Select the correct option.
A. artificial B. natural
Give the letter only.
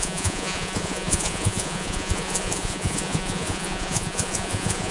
A